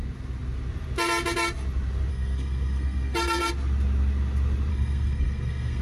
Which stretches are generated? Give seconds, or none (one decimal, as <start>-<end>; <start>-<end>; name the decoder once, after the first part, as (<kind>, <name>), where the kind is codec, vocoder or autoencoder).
2.1-3.5 (codec, SNAC); 4.7-5.8